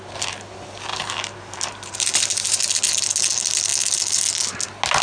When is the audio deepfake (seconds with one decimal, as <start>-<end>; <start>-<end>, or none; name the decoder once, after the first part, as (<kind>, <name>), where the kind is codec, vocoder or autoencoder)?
0.9-2.6 (vocoder, BigVGAN v2)